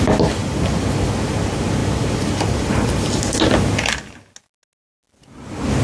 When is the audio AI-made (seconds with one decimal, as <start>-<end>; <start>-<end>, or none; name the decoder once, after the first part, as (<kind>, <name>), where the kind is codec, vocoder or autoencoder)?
0.4-1.1 (vocoder, BigVGAN v2); 1.8-2.7